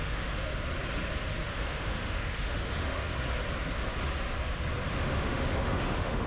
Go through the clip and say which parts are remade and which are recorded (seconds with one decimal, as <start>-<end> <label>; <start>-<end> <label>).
0.0-0.5 remade; 0.5-1.4 recorded; 1.4-3.1 remade; 3.1-4.9 recorded; 4.9-6.3 remade